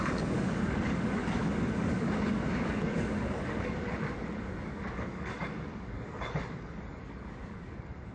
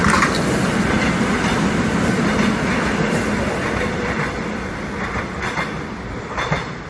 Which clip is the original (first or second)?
second